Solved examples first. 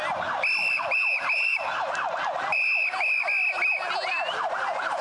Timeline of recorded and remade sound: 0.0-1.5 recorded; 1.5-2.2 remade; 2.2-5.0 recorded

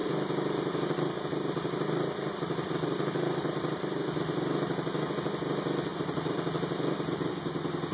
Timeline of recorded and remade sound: 0.0-4.4 remade; 4.4-5.9 recorded; 5.9-7.3 remade; 7.3-7.9 recorded

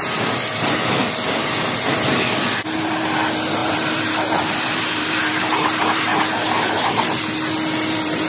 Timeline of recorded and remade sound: 0.0-6.1 remade; 6.1-7.9 recorded; 7.9-8.3 remade

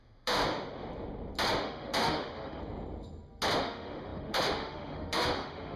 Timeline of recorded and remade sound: 0.0-0.4 remade; 0.4-1.6 recorded; 1.6-2.6 remade; 2.6-3.6 recorded; 3.6-5.8 remade

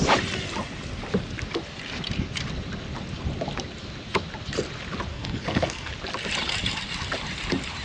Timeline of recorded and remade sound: 0.0-5.1 recorded; 5.1-5.9 remade; 5.9-7.8 recorded

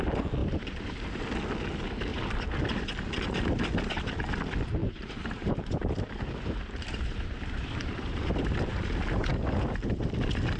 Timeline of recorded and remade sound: 0.0-0.4 recorded; 0.4-1.2 remade; 1.2-2.1 recorded; 2.1-2.6 remade; 2.6-4.8 recorded; 4.8-8.8 remade; 8.8-9.3 recorded; 9.3-10.0 remade; 10.0-10.6 recorded

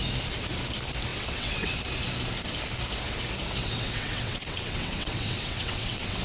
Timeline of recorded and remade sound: 0.0-1.1 recorded; 1.1-1.7 remade; 1.7-3.6 recorded; 3.6-6.2 remade

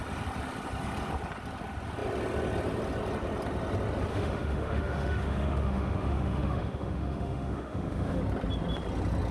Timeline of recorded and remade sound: 0.0-4.1 recorded; 4.1-8.2 remade; 8.2-9.3 recorded